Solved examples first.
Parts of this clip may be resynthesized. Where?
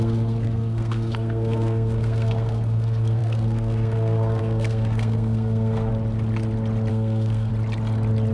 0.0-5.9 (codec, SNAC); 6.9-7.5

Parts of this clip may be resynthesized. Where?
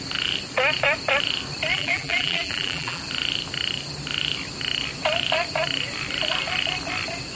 1.7-3.0 (vocoder, BigVGAN v2)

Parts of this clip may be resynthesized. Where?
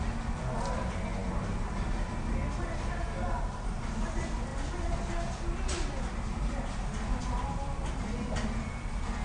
none